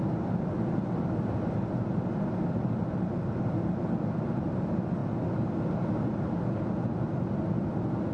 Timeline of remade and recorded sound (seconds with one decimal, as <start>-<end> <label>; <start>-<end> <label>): 0.0-8.1 recorded